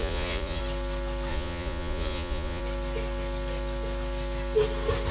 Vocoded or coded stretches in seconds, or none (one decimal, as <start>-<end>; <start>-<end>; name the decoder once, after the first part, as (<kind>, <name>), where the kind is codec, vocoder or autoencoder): 0.0-0.6 (vocoder, Vocos); 1.3-2.6